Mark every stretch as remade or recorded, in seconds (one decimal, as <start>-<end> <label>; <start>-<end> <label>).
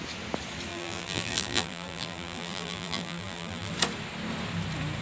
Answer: 0.0-0.7 recorded; 0.7-3.7 remade; 3.7-5.0 recorded